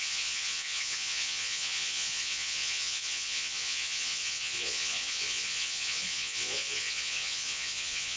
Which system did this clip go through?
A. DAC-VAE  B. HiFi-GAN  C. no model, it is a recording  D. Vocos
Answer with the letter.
D